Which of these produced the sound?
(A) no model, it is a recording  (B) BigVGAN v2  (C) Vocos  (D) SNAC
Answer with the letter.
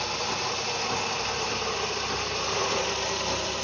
B